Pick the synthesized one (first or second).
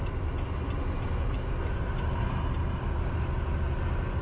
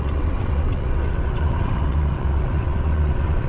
second